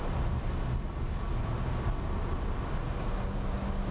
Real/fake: real